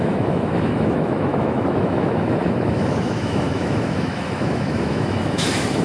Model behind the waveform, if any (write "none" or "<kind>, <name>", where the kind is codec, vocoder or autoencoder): autoencoder, DAC-VAE